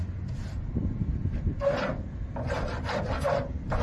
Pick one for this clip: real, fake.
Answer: real